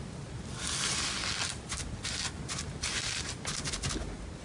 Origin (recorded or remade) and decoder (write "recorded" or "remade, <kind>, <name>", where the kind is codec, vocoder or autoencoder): recorded